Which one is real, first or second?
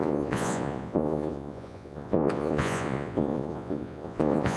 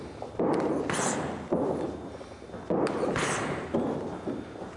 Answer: second